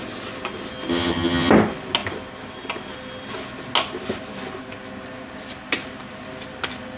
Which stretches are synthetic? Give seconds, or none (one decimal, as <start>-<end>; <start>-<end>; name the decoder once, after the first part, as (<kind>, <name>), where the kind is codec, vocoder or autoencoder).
0.9-1.5 (vocoder, HiFi-GAN)